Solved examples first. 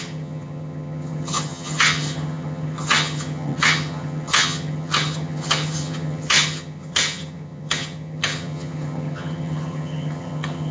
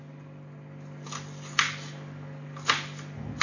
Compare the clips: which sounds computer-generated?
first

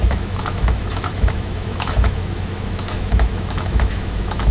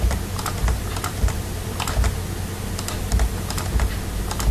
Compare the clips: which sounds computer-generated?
first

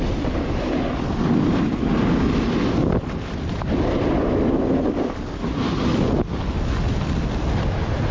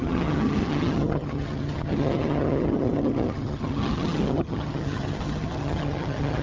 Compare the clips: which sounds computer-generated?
second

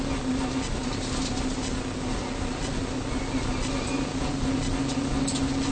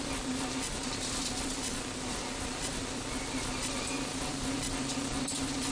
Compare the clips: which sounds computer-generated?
second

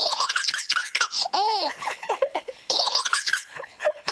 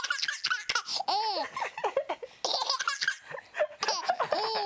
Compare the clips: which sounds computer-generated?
first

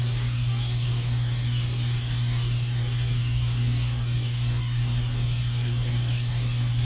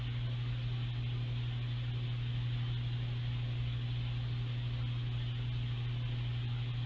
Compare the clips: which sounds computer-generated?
first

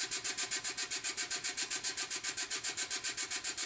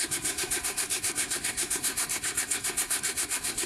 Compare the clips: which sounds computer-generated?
second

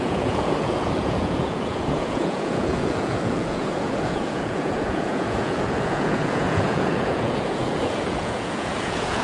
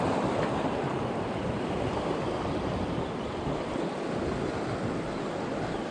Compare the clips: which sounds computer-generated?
first